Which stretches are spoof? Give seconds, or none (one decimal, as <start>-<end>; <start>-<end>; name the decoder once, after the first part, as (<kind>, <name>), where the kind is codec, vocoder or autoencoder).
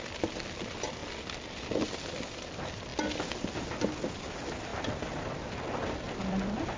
none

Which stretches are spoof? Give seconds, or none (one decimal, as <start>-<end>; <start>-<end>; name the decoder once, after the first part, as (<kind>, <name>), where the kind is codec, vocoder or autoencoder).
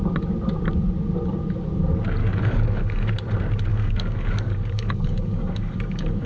2.2-3.1 (codec, DAC); 3.7-6.3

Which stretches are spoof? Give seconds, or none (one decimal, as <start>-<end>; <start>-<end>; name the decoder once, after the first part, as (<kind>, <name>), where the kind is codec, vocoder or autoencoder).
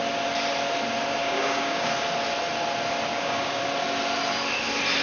1.2-1.9 (codec, DAC); 3.1-3.6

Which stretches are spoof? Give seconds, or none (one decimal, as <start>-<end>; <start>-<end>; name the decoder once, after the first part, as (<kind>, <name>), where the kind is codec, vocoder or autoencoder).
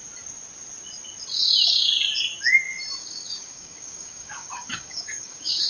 3.0-5.7 (codec, DAC)